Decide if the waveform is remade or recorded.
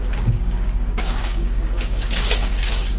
remade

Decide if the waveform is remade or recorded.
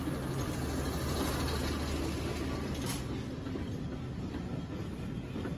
recorded